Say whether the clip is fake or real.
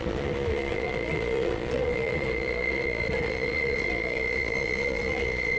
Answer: fake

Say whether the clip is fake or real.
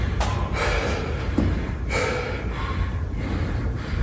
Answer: real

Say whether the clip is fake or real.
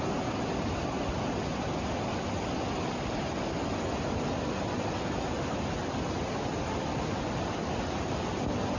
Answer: real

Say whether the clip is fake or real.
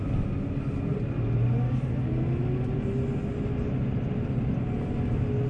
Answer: real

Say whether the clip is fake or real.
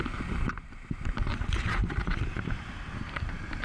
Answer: fake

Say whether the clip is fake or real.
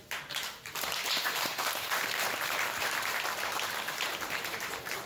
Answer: fake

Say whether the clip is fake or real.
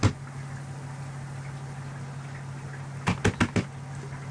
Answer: real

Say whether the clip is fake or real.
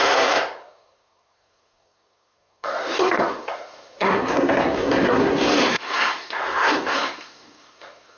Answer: fake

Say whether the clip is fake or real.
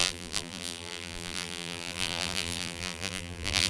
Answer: fake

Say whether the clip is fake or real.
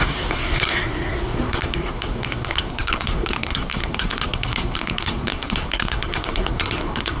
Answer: fake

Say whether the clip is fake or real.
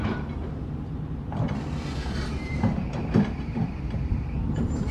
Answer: fake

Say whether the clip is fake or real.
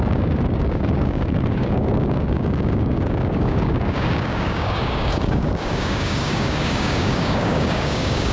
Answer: fake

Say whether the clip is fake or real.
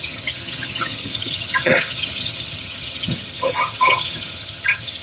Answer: fake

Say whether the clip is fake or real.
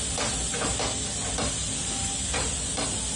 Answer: real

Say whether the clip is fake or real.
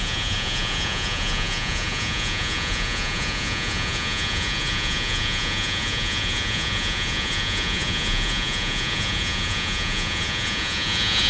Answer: fake